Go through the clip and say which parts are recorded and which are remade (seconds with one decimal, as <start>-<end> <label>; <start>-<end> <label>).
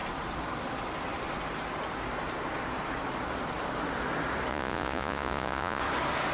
0.0-4.5 recorded; 4.5-5.8 remade; 5.8-6.3 recorded